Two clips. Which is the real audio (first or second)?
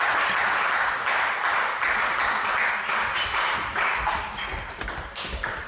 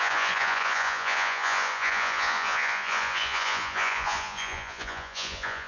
first